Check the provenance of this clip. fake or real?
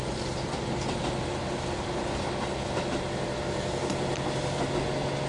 real